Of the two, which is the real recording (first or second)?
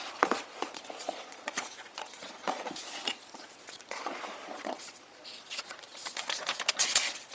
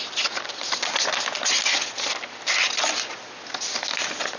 second